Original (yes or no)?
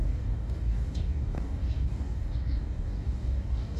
no